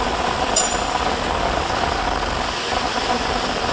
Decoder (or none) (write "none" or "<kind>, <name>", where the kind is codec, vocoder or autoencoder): none